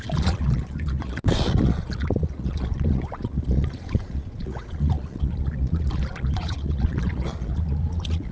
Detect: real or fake fake